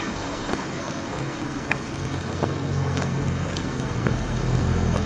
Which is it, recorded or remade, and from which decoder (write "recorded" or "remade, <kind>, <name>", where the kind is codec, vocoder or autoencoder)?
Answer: remade, codec, SNAC